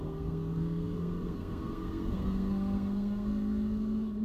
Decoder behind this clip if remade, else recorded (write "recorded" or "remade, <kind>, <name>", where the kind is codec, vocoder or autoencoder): remade, codec, SNAC